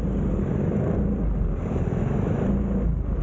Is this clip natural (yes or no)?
yes